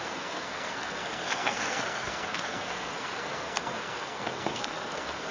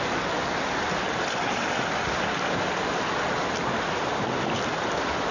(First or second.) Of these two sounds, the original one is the second